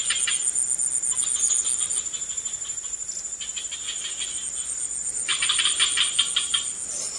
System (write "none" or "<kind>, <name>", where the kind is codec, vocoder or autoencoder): none